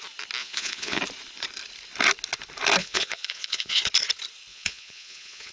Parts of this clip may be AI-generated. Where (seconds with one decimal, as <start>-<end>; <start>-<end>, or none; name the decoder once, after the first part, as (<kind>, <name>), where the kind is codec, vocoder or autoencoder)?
0.4-1.0 (vocoder, Vocos); 2.8-3.8; 4.5-5.5